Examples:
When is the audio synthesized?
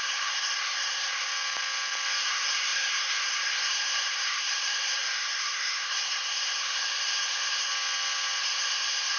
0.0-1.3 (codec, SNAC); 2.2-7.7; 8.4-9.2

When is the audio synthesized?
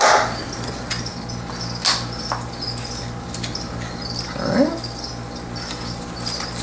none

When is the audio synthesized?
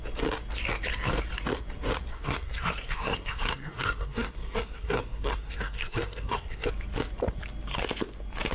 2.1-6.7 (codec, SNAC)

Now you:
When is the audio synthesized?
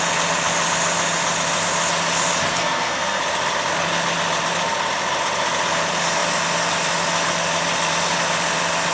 2.5-3.2 (codec, SNAC)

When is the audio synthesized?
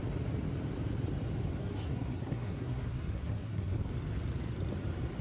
1.6-3.9 (codec, SNAC)